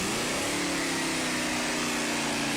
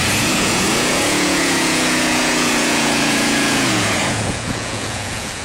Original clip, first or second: first